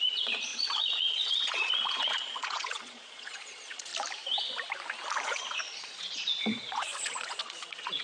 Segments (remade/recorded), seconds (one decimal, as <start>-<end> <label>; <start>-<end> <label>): 0.0-3.9 remade; 3.9-5.2 recorded; 5.2-8.0 remade

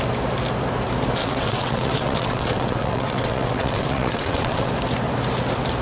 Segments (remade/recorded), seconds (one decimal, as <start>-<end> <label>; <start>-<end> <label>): 0.0-1.2 recorded; 1.2-4.7 remade; 4.7-5.8 recorded

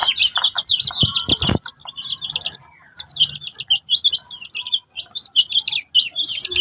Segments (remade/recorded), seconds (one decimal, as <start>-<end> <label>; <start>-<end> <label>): 0.0-6.6 recorded

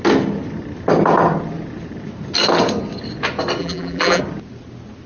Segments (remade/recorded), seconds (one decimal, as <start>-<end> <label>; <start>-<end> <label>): 0.0-3.6 recorded; 3.6-4.2 remade; 4.2-5.1 recorded